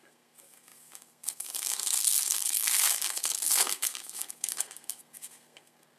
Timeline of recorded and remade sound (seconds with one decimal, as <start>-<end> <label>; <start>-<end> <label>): 0.0-6.0 remade